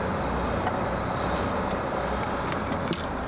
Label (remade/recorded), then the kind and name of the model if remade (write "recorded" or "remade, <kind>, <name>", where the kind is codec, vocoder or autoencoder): recorded